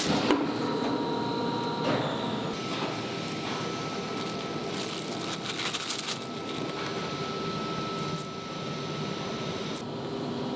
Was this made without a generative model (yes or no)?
yes